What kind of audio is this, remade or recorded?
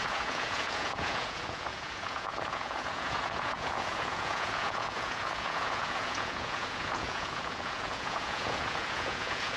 remade